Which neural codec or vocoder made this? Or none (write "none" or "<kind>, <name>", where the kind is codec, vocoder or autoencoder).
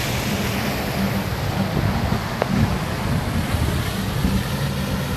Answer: none